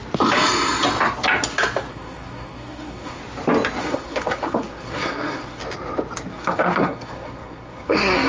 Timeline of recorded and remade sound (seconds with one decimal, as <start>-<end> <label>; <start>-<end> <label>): 0.0-1.9 recorded; 1.9-3.2 remade; 3.2-3.8 recorded; 3.8-5.6 remade; 5.6-6.3 recorded; 6.3-8.3 remade